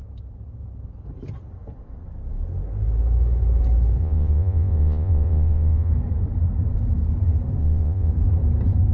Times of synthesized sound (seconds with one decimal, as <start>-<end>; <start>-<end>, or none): 4.0-5.9; 7.6-8.1